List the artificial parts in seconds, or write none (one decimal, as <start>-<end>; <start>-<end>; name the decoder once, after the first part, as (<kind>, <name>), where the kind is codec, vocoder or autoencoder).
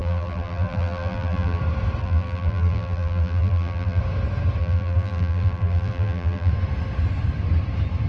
0.0-1.6 (vocoder, BigVGAN v2); 2.0-4.0; 4.6-6.5